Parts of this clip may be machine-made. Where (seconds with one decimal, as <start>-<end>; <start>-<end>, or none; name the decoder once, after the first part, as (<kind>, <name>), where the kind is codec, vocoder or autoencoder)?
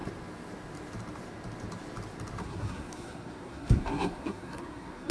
2.4-5.1 (codec, SNAC)